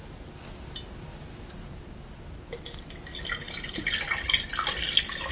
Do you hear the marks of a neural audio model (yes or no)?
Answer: no